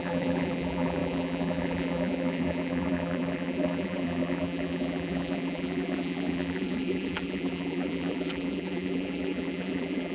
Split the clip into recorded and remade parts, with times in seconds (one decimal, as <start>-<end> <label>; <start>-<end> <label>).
0.0-10.1 remade